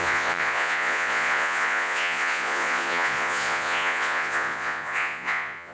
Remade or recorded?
remade